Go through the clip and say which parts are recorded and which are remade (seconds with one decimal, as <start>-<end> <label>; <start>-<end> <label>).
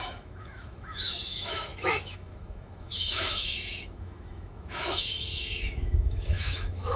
0.0-7.0 remade